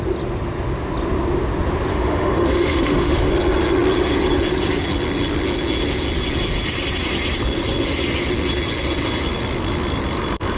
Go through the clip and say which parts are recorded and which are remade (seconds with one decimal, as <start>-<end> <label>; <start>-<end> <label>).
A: 0.0-1.9 recorded; 1.9-3.3 remade; 3.3-10.6 recorded